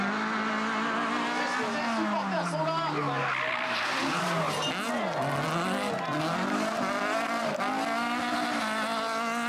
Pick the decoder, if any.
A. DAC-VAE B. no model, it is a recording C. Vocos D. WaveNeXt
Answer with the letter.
B